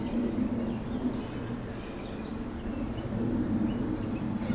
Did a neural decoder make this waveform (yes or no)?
no